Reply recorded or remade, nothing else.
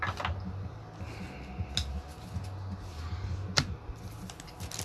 recorded